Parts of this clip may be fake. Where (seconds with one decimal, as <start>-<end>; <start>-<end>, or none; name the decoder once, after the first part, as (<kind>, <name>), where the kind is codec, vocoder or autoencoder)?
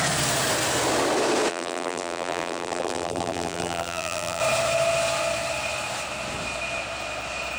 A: 1.5-4.4 (vocoder, BigVGAN v2)